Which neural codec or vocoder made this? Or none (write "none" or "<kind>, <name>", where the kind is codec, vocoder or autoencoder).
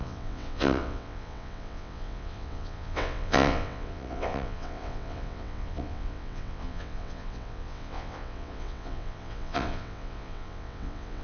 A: vocoder, WaveNeXt